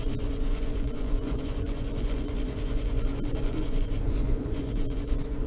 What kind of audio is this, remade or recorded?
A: remade